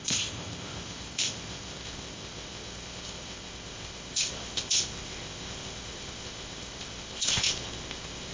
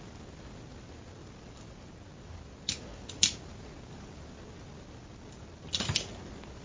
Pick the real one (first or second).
second